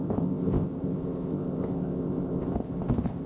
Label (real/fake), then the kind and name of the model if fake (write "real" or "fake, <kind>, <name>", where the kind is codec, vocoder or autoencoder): fake, codec, ZipCodec